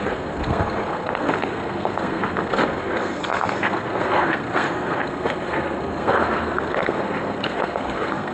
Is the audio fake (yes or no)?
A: yes